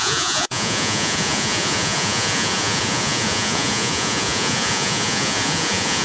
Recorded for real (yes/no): no